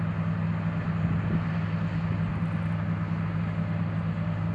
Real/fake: real